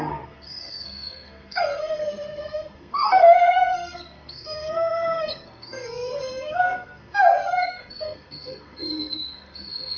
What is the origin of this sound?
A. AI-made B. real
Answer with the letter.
A